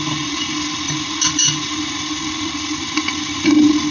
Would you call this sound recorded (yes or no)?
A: yes